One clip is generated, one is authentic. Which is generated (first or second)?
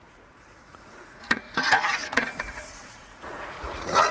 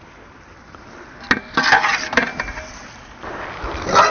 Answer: first